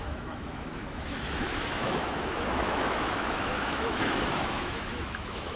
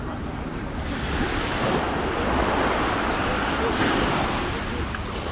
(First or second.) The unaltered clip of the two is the second